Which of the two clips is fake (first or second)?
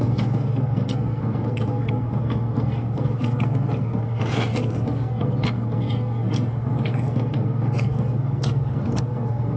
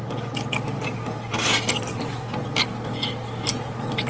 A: first